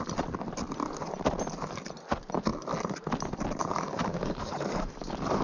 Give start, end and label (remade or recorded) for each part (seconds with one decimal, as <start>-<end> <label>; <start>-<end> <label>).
0.0-3.6 recorded; 3.6-5.4 remade